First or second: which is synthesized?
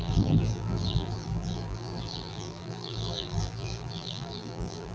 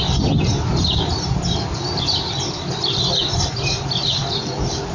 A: first